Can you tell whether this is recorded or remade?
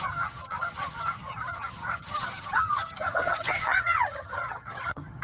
remade